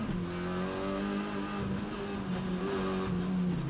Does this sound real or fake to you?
real